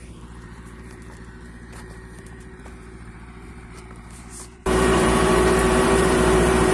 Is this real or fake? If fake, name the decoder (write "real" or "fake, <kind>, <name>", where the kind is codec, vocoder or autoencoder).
fake, vocoder, BigVGAN v2